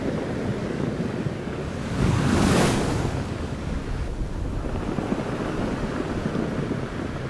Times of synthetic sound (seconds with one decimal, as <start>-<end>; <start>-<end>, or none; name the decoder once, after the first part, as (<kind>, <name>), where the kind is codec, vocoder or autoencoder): 0.6-3.8 (codec, DAC)